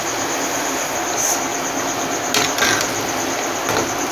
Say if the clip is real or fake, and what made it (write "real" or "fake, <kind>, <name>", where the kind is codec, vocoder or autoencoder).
real